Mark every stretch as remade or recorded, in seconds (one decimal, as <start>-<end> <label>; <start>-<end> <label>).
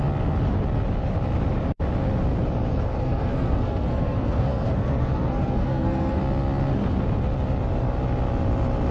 0.0-2.7 recorded; 2.7-6.2 remade; 6.2-8.9 recorded